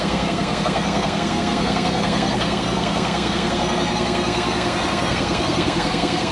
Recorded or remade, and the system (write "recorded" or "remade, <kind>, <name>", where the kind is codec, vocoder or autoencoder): remade, codec, SNAC